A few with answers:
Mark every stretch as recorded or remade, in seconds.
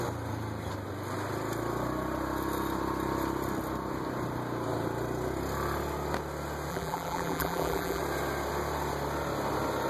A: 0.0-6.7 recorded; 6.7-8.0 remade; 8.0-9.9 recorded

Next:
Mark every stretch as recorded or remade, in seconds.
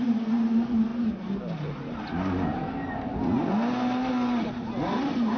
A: 0.0-5.4 recorded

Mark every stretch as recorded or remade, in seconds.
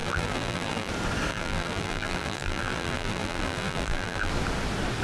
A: 0.0-0.9 remade; 0.9-1.3 recorded; 1.3-4.3 remade; 4.3-5.0 recorded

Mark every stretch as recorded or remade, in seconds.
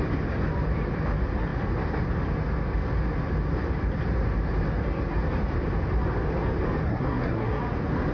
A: 0.0-6.8 recorded; 6.8-7.6 remade; 7.6-8.1 recorded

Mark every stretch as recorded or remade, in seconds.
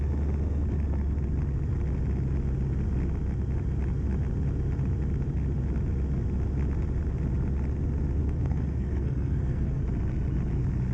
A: 0.0-8.2 recorded; 8.2-9.8 remade; 9.8-10.9 recorded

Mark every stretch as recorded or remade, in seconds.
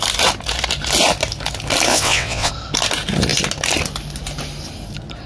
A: 0.0-1.9 recorded; 1.9-2.5 remade; 2.5-5.3 recorded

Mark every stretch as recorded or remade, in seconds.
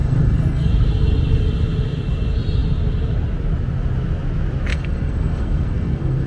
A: 0.0-0.7 remade; 0.7-4.7 recorded; 4.7-6.3 remade